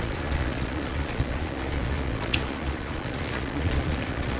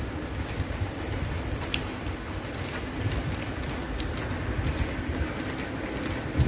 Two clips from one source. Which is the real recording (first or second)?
second